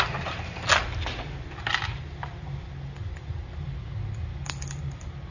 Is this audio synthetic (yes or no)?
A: no